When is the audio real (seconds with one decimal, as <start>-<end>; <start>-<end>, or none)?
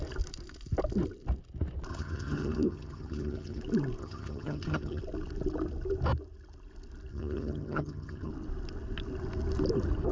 0.0-1.9; 3.6-4.0; 5.0-7.1; 8.3-10.1